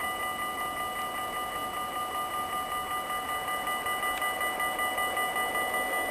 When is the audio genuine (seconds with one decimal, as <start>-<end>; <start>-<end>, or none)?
0.0-6.1